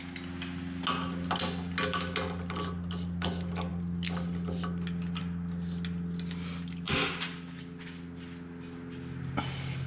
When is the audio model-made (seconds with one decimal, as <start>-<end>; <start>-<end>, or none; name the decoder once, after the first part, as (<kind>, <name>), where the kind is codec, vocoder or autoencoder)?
none